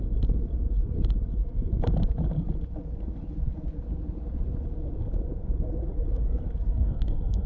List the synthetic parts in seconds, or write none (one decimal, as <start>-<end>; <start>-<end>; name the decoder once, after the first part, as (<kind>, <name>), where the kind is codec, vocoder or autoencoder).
6.7-7.5 (codec, SNAC)